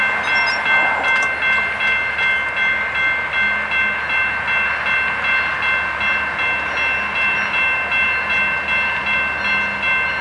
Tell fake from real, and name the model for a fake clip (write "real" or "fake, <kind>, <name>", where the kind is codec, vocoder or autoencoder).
real